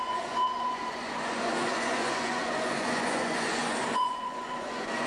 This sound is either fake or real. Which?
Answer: fake